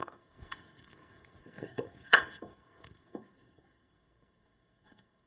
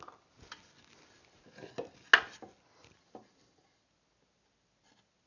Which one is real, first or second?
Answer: second